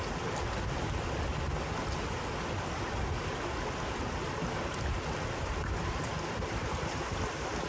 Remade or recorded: recorded